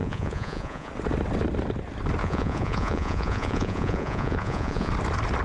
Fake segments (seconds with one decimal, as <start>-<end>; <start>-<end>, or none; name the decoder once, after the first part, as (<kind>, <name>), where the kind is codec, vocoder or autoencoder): 0.0-0.9 (vocoder, Vocos); 2.2-4.9